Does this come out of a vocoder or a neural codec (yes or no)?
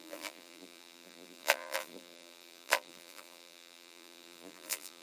yes